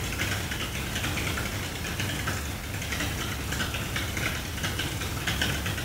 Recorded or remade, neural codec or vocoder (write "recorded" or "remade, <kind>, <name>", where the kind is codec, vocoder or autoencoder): recorded